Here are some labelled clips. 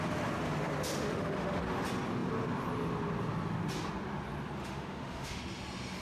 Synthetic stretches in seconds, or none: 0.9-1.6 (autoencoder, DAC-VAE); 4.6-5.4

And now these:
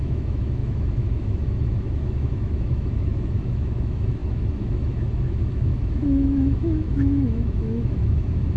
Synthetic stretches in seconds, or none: 0.0-8.6 (autoencoder, DAC-VAE)

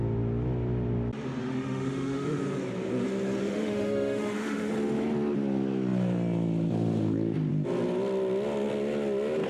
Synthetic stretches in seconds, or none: 1.4-2.4 (autoencoder, DAC-VAE); 3.4-4.7

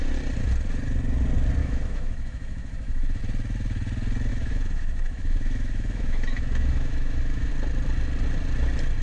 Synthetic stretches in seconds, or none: 1.6-3.2 (autoencoder, DAC-VAE); 4.3-7.5

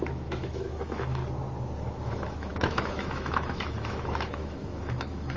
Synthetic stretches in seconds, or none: 0.0-1.2 (autoencoder, DAC-VAE); 2.0-5.4

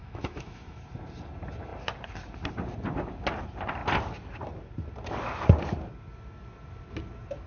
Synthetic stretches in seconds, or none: 0.0-0.8 (autoencoder, DAC-VAE)